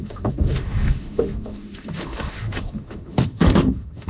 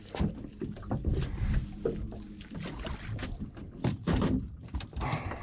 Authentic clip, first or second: second